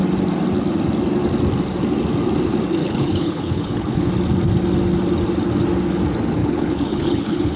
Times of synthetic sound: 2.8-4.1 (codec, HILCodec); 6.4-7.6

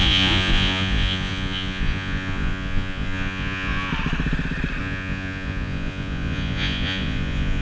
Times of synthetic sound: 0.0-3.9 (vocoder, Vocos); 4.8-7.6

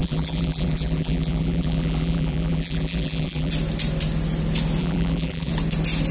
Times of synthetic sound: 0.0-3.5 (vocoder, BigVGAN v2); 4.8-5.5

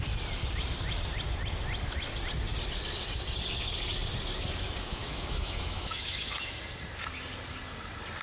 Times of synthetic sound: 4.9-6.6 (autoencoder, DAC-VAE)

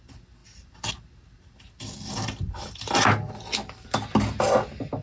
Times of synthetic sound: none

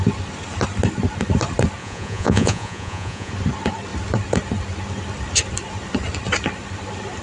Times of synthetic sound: 1.8-3.3 (vocoder, Vocos)

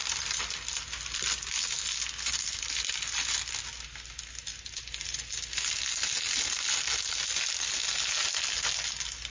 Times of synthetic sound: none